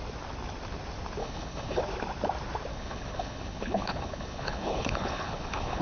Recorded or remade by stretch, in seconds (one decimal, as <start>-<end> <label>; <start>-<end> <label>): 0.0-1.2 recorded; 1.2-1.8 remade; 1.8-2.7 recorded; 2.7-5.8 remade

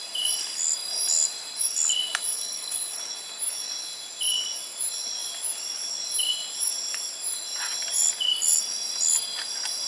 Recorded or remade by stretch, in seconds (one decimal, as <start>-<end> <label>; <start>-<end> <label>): 0.0-2.3 recorded; 2.3-3.0 remade; 3.0-9.9 recorded

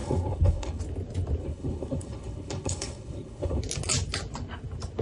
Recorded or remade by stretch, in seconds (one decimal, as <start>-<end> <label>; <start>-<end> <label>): 0.0-0.8 remade; 0.8-1.4 recorded; 1.4-3.6 remade; 3.6-5.0 recorded

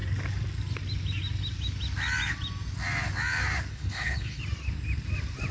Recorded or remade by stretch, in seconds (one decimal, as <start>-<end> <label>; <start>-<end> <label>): 0.0-3.7 recorded; 3.7-4.4 remade; 4.4-5.5 recorded

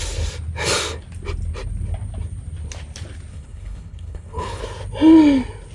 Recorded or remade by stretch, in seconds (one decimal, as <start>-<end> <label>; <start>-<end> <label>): 0.0-3.3 recorded; 3.3-4.6 remade; 4.6-5.7 recorded

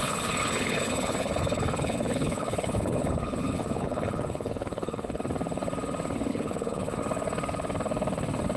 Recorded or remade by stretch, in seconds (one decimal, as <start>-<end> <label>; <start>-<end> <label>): 0.0-5.2 remade; 5.2-6.3 recorded; 6.3-7.0 remade; 7.0-8.6 recorded

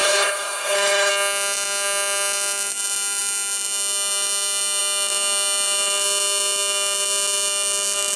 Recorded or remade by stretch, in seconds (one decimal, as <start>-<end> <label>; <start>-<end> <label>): 0.0-1.1 remade; 1.1-8.2 recorded